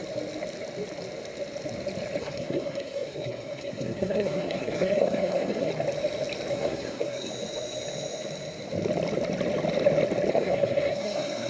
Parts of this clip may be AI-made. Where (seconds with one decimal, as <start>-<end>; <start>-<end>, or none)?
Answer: 2.2-5.7; 6.5-7.3; 10.3-11.5